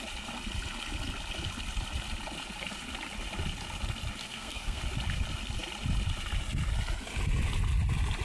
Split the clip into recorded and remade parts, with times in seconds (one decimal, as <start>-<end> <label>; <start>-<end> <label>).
0.0-4.2 recorded; 4.2-4.8 remade; 4.8-8.2 recorded